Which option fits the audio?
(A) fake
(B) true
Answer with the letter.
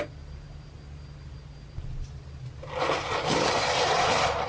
B